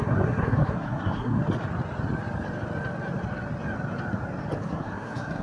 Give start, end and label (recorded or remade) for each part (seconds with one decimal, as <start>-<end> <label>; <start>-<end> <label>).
0.0-1.4 remade; 1.4-4.6 recorded; 4.6-5.4 remade